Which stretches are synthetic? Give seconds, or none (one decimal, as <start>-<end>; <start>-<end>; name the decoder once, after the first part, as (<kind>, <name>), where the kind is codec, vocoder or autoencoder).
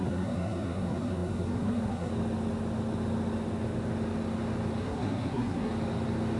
0.0-2.1 (codec, SNAC); 4.8-5.7